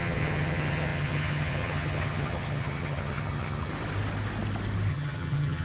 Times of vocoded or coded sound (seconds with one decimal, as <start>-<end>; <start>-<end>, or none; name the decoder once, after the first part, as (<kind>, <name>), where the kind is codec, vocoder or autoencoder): 0.0-3.7 (vocoder, HiFi-GAN); 4.9-5.6